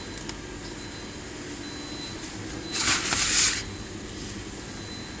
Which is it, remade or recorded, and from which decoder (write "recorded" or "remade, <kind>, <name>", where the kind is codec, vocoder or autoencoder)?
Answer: recorded